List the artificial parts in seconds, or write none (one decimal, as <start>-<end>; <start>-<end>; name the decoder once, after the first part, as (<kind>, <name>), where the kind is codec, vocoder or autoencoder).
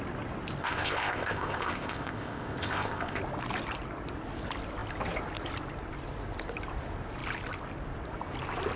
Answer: 0.6-3.2 (codec, ZipCodec)